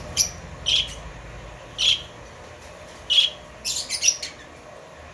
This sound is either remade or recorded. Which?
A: recorded